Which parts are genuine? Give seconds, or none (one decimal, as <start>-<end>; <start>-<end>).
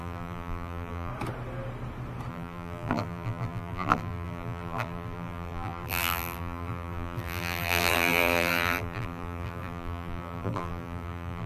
1.1-2.3